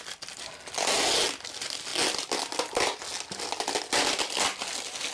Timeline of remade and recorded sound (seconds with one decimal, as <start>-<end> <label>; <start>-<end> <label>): 0.0-5.1 recorded